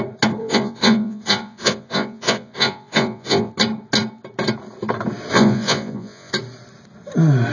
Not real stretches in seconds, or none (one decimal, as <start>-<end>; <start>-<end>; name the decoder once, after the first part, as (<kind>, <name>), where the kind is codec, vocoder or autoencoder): 0.4-3.5 (vocoder, Vocos); 5.3-6.3